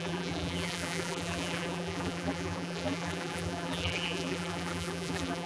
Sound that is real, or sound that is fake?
fake